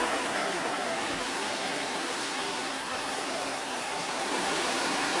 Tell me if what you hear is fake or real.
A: fake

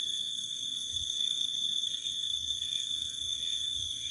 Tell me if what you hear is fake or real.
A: fake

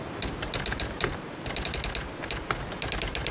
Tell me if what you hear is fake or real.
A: real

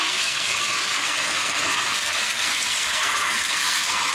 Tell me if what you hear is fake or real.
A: fake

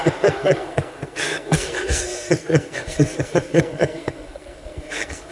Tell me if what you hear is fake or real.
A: fake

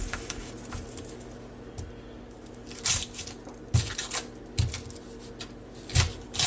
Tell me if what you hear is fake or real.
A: real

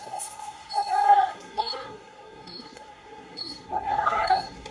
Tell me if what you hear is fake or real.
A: fake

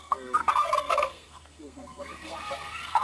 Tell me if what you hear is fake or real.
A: fake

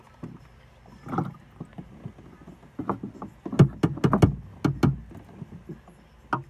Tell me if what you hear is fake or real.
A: real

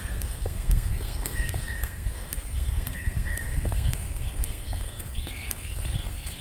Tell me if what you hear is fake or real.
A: fake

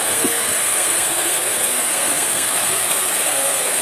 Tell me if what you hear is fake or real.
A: fake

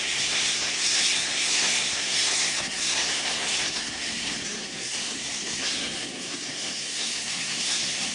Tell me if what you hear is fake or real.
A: fake